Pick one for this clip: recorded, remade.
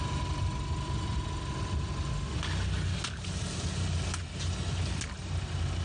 recorded